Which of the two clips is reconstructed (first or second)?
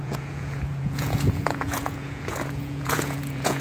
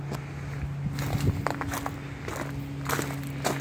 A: first